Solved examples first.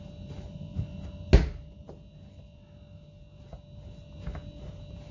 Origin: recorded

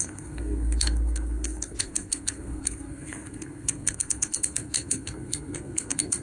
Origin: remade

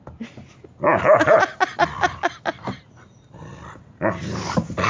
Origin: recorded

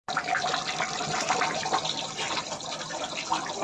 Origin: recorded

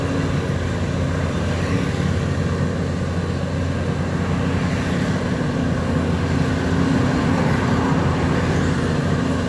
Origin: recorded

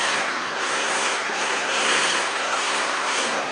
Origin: remade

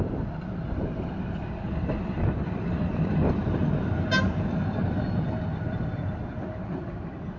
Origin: recorded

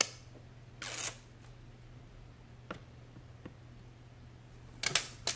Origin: recorded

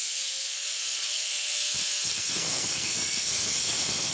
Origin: remade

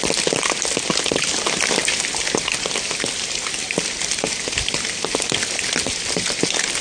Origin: recorded